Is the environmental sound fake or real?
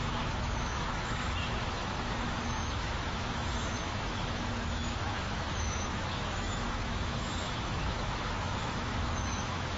fake